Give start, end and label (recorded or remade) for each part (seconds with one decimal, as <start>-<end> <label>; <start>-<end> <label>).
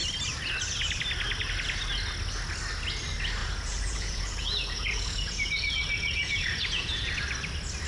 0.0-3.4 recorded; 3.4-7.1 remade; 7.1-7.9 recorded